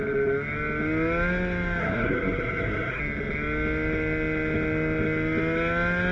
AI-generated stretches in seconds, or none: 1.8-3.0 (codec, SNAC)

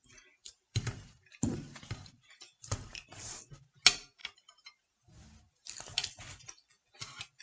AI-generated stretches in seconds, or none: 0.4-2.4 (vocoder, BigVGAN v2)

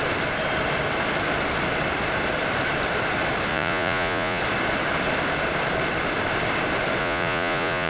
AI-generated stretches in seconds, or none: 3.5-4.4 (vocoder, Vocos); 7.0-7.9

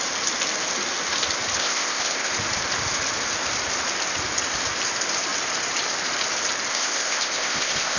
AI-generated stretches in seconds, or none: 1.6-2.3 (codec, ZipCodec); 6.7-8.0

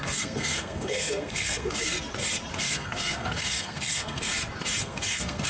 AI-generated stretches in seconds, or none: 0.0-1.9 (codec, SNAC); 2.6-4.3; 4.8-5.5